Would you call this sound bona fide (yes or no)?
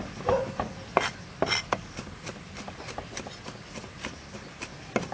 yes